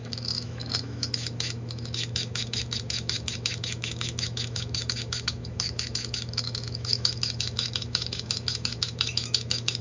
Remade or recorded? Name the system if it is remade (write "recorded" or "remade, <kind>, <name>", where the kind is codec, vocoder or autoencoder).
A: remade, autoencoder, DAC-VAE